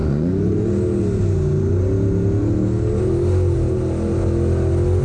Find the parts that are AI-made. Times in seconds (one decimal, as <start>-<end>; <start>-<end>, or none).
0.0-0.7